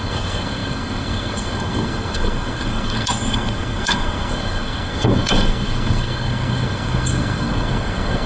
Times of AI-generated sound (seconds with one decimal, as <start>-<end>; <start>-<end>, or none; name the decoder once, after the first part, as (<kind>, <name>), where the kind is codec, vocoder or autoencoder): 0.0-8.3 (codec, SNAC)